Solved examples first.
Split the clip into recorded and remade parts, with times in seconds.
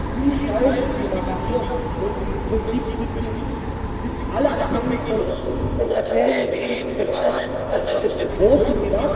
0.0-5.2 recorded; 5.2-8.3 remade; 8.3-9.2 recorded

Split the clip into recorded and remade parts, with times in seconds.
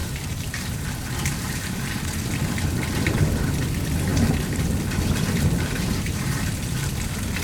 0.0-2.0 remade; 2.0-4.1 recorded; 4.1-6.5 remade; 6.5-7.4 recorded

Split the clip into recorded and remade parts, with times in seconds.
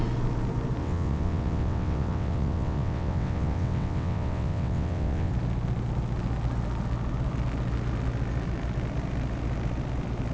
0.0-0.8 recorded; 0.8-5.3 remade; 5.3-10.3 recorded